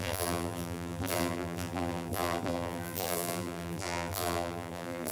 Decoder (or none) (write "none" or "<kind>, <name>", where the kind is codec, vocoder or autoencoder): vocoder, BigVGAN v2